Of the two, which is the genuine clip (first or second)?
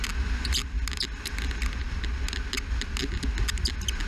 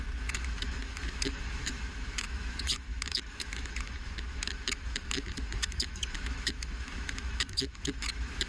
first